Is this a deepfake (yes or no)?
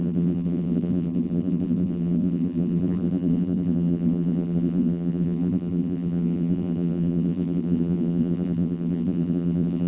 yes